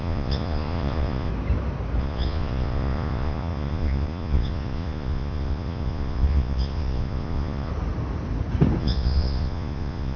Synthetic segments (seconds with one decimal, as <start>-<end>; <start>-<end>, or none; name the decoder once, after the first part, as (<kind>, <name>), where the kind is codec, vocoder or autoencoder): 0.0-1.3 (vocoder, Vocos); 2.0-7.7; 8.8-10.2